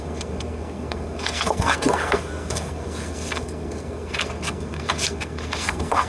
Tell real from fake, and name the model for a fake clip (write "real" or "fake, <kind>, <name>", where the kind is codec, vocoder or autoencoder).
fake, codec, SNAC